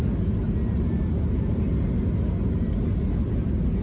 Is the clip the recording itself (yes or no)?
yes